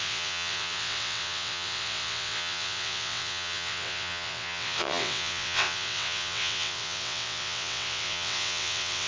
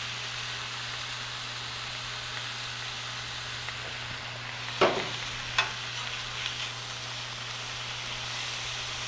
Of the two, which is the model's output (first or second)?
first